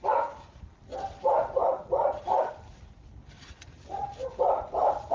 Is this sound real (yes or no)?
yes